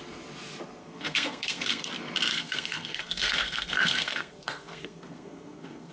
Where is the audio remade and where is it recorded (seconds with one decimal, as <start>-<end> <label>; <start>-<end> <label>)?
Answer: 0.0-0.8 recorded; 0.8-1.9 remade; 1.9-2.3 recorded; 2.3-5.9 remade